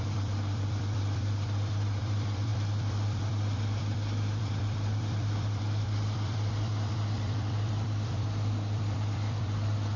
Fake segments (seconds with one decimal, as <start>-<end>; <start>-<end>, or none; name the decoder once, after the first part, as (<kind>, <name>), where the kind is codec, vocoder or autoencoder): 0.0-10.0 (vocoder, BigVGAN v2)